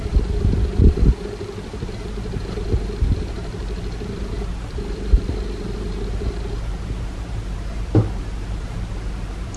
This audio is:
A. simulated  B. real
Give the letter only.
A